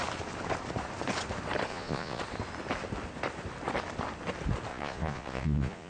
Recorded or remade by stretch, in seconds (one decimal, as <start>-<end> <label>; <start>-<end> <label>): 0.0-1.7 recorded; 1.7-2.2 remade; 2.2-4.7 recorded; 4.7-5.9 remade